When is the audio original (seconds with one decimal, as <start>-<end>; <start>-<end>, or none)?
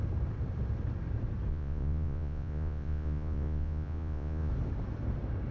0.0-1.5; 4.5-5.5